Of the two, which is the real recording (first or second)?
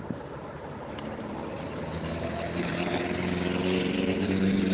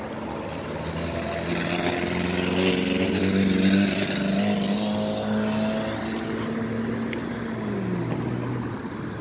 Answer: second